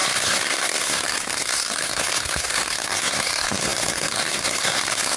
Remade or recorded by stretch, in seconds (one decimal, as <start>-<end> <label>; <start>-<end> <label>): 0.0-5.2 remade